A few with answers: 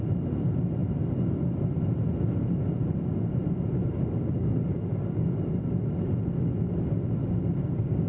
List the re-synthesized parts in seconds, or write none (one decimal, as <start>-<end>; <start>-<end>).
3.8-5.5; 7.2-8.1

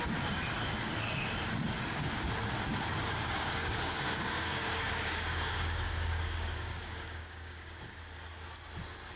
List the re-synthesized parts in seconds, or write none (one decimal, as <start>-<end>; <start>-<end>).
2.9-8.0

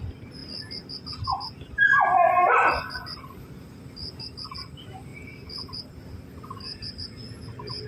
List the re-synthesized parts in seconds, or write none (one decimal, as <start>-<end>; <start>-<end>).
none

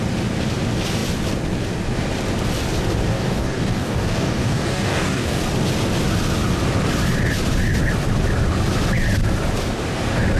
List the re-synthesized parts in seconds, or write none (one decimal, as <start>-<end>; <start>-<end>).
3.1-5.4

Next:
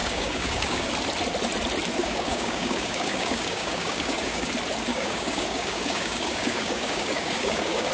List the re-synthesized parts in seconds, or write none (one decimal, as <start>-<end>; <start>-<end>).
0.0-0.9; 2.0-4.5; 4.9-7.9